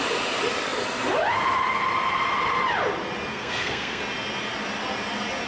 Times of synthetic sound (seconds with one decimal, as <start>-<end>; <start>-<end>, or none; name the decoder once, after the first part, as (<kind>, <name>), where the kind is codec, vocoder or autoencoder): 3.3-4.0 (codec, SNAC)